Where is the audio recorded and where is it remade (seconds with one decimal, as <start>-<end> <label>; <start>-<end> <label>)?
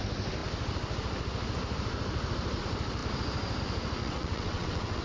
0.0-4.0 recorded; 4.0-5.0 remade